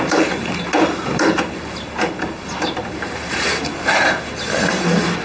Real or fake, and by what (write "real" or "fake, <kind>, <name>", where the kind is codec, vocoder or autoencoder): real